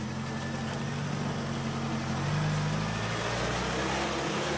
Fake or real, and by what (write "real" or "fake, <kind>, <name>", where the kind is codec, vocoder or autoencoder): real